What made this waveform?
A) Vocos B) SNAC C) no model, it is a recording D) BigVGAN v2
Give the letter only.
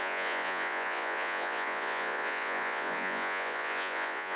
A